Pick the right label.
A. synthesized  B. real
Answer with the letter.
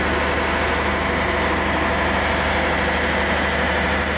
B